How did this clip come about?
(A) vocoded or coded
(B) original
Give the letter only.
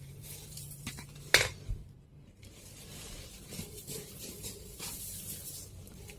A